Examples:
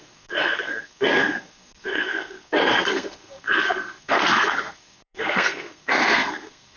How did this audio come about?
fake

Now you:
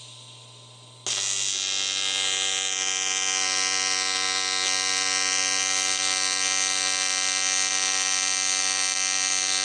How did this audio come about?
real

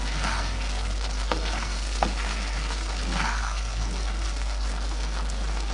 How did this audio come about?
fake